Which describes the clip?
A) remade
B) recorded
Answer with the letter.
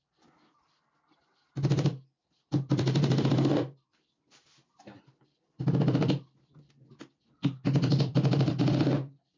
A